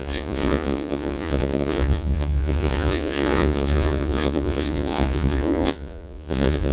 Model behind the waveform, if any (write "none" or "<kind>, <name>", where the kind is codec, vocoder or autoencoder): vocoder, Vocos